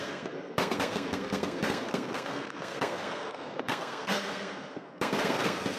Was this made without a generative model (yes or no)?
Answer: no